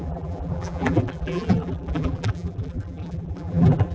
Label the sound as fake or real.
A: fake